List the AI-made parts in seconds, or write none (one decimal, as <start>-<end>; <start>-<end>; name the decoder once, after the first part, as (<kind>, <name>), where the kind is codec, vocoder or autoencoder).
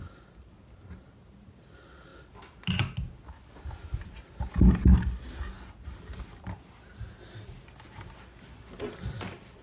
none